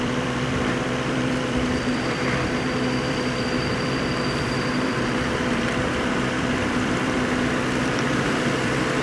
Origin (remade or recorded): remade